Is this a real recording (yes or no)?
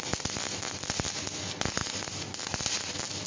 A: yes